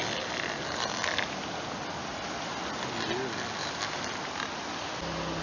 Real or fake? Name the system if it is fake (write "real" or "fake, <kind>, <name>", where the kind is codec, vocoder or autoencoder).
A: real